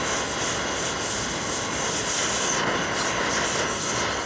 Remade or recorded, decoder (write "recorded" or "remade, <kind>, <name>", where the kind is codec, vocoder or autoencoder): recorded